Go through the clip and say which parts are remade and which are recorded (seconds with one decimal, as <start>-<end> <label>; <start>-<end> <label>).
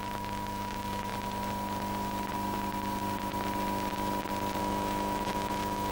0.0-1.1 remade; 1.1-4.6 recorded; 4.6-5.9 remade